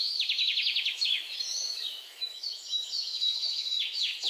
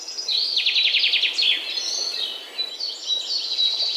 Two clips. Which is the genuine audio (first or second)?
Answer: second